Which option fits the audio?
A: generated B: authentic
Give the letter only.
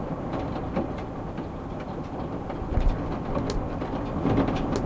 B